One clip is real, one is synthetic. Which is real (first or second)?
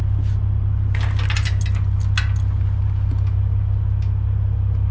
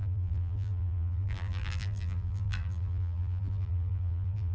first